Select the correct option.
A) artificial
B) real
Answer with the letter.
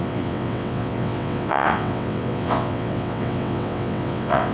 A